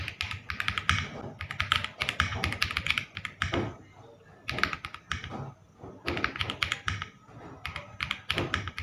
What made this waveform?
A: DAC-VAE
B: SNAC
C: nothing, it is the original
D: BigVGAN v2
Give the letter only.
C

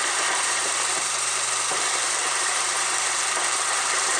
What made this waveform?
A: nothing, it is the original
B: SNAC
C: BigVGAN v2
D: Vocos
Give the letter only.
C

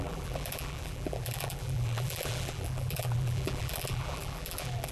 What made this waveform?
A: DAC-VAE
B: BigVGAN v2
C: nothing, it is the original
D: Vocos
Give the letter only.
B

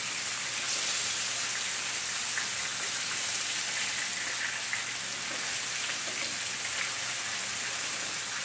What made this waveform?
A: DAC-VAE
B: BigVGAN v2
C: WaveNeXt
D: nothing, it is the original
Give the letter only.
D